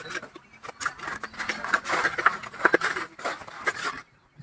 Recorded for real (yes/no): yes